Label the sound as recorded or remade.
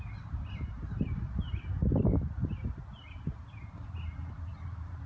recorded